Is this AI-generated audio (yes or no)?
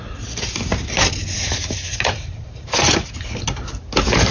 no